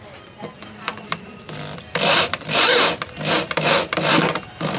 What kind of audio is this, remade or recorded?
recorded